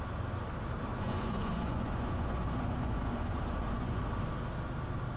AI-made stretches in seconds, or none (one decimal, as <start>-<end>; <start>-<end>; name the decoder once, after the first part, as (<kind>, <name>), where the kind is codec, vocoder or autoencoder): 0.9-4.0 (vocoder, Vocos)